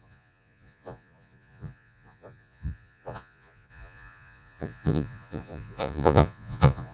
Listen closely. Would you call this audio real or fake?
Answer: fake